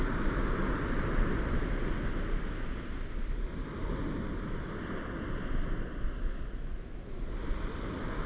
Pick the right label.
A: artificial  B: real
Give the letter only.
B